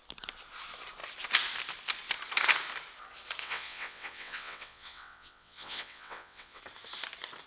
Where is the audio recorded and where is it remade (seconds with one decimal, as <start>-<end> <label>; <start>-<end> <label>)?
0.0-3.4 recorded; 3.4-6.6 remade; 6.6-7.5 recorded